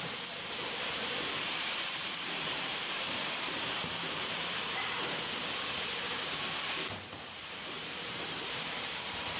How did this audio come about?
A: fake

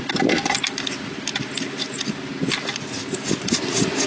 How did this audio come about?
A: real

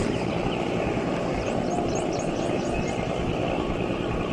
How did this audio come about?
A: real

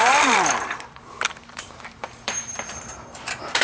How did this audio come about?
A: fake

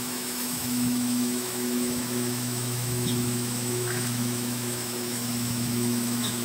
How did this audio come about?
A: fake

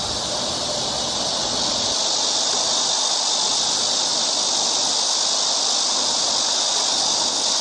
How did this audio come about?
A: real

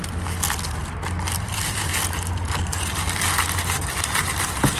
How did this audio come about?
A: real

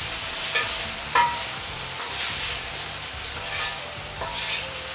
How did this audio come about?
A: fake